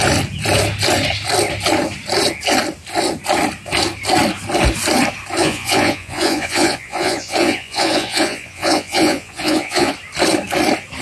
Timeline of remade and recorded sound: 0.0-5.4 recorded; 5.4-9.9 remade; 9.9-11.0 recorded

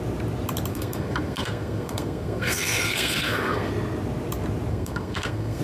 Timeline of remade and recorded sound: 0.0-0.7 recorded; 0.7-3.7 remade; 3.7-4.7 recorded; 4.7-5.6 remade

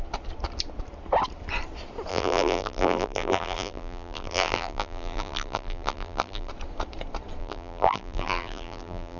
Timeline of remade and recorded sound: 0.0-2.1 recorded; 2.1-6.5 remade; 6.5-7.4 recorded; 7.4-9.2 remade

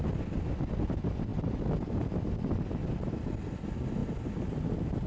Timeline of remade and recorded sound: 0.0-5.1 recorded